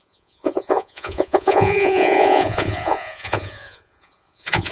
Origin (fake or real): fake